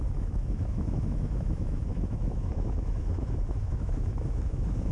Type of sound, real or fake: fake